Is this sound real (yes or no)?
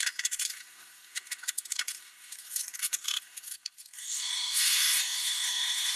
no